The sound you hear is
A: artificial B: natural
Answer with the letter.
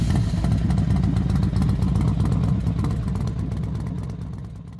B